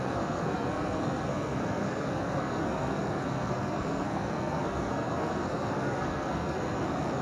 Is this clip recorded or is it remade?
remade